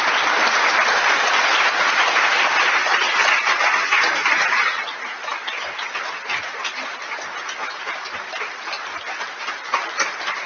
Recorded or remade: recorded